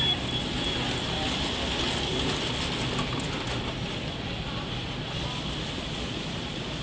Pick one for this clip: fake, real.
real